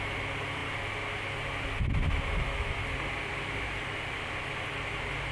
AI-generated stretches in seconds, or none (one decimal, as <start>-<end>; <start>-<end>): none